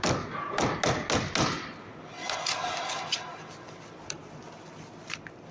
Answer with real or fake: real